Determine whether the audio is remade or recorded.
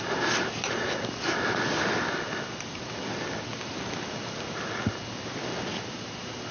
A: recorded